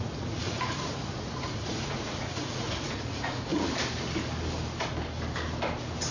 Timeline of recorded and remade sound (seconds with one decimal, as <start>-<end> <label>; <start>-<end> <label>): 0.0-3.5 remade; 3.5-6.1 recorded